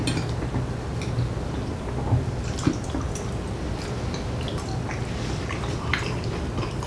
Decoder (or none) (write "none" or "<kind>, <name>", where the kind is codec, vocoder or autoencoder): none